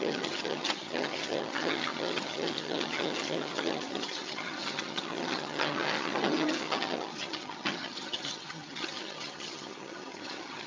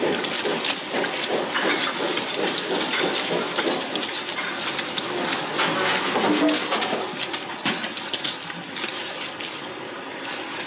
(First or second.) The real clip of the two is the second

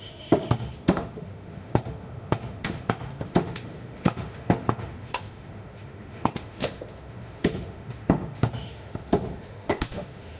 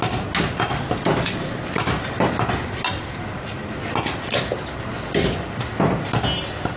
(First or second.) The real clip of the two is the second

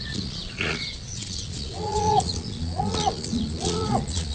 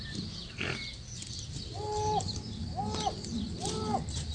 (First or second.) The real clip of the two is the second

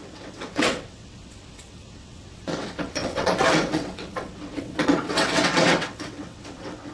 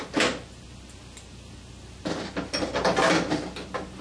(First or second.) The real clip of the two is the second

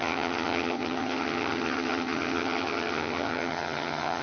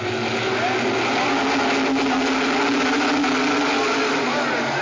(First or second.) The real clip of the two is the second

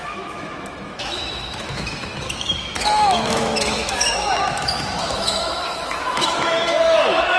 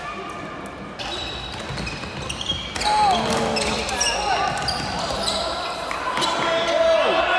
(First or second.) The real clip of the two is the second